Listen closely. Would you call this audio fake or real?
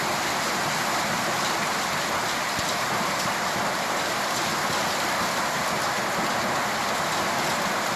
real